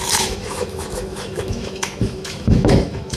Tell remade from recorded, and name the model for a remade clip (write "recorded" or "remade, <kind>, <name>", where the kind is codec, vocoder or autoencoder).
remade, autoencoder, DAC-VAE